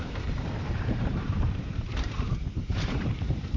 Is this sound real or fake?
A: fake